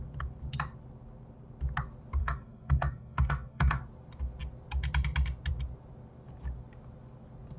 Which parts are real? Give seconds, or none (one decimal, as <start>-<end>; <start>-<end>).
0.0-2.2; 3.8-7.6